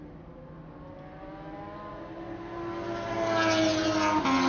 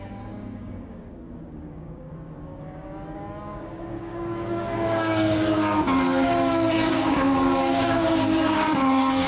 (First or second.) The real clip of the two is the first